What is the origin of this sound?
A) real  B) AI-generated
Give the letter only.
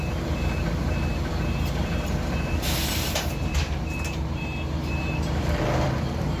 B